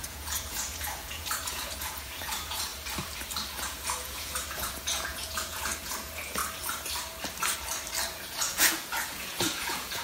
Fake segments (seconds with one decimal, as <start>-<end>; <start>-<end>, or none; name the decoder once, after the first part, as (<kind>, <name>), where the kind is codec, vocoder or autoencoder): 0.0-2.7 (vocoder, Vocos); 3.6-6.4; 8.1-10.0

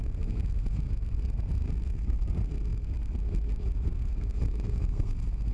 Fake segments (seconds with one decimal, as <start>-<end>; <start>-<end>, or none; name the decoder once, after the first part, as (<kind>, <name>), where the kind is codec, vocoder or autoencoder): 0.0-5.5 (codec, SNAC)

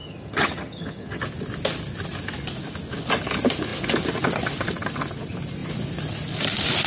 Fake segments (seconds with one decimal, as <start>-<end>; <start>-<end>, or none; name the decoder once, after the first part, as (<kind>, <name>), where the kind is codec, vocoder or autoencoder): 0.0-1.2 (vocoder, HiFi-GAN)

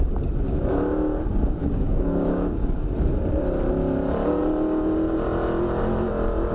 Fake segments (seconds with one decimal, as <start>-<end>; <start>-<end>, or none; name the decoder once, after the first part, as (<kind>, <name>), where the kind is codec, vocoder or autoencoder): 1.6-2.9 (codec, DAC)

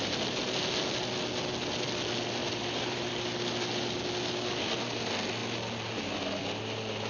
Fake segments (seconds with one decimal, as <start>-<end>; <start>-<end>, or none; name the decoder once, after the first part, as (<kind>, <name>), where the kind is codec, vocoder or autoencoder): 2.4-3.1 (vocoder, BigVGAN v2)

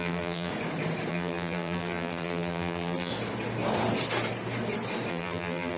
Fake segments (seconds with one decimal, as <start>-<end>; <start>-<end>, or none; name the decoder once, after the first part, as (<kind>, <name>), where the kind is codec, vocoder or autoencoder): 0.0-0.5 (vocoder, BigVGAN v2); 1.1-3.1; 5.1-5.8

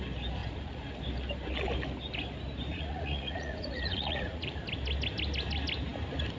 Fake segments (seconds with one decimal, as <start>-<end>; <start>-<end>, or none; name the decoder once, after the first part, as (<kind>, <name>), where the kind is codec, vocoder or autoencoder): 0.4-1.0 (vocoder, Vocos); 2.7-4.6

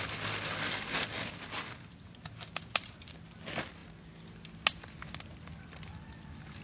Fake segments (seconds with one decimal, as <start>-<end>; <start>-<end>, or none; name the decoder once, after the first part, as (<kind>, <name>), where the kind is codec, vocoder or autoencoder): none